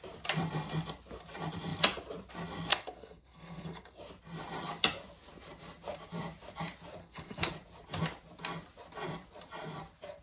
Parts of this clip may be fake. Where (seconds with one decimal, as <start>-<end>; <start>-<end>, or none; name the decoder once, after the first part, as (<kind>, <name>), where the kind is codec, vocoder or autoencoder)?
2.7-4.0 (codec, SNAC); 7.0-7.5